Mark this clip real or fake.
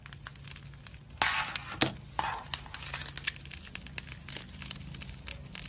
real